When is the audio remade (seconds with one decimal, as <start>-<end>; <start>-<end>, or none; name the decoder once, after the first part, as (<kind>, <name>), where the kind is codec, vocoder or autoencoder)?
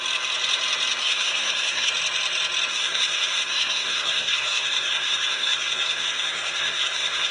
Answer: 1.0-1.9 (codec, SNAC); 2.7-7.3